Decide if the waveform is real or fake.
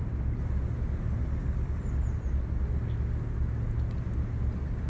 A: real